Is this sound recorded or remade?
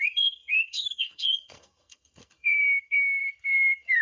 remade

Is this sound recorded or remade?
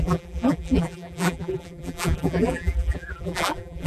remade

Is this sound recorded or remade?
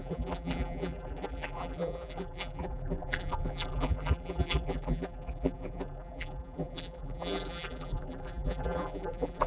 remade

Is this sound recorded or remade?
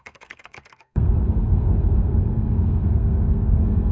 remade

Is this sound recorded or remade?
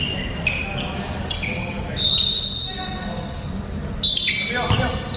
recorded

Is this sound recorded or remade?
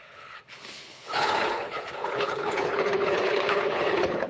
remade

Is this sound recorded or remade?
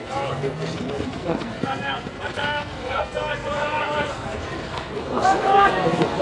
remade